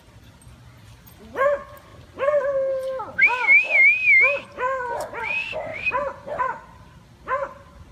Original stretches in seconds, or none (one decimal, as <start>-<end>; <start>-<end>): 0.0-7.9